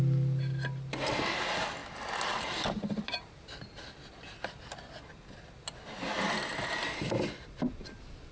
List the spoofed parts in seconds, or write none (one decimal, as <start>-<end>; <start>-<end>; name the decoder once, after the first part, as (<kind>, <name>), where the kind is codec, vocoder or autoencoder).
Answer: none